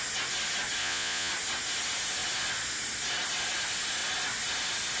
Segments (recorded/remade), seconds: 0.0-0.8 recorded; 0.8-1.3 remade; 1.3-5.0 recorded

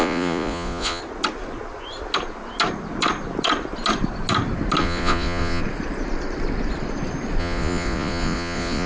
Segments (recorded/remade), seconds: 0.0-1.0 remade; 1.0-4.8 recorded; 4.8-5.6 remade; 5.6-7.4 recorded; 7.4-8.9 remade

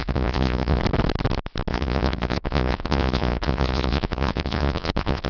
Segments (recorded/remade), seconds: 0.0-0.8 remade; 0.8-1.7 recorded; 1.7-5.3 remade

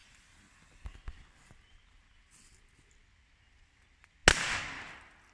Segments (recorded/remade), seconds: 0.0-5.3 recorded

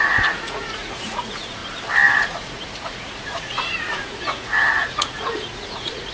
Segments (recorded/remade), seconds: 0.0-1.6 remade; 1.6-2.2 recorded; 2.2-6.1 remade